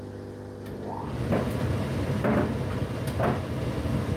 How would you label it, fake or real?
real